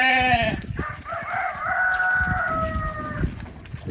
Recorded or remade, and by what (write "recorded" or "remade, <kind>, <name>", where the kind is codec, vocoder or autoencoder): recorded